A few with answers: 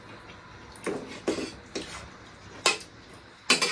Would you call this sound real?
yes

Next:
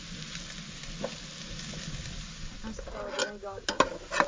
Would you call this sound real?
yes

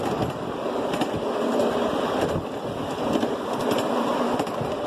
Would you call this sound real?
yes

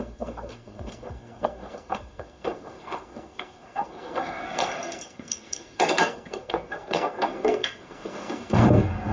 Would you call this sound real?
no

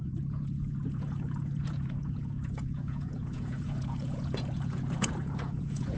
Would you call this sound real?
no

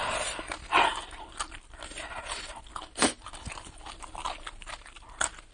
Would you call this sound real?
yes